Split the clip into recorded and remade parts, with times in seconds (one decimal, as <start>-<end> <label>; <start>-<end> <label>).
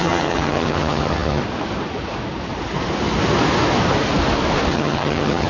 0.0-1.4 remade; 1.4-4.7 recorded; 4.7-5.5 remade